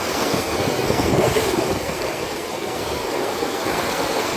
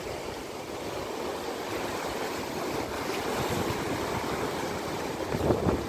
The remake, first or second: first